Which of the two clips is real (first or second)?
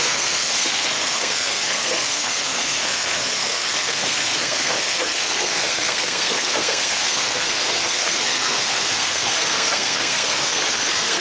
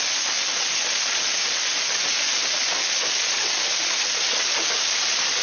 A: second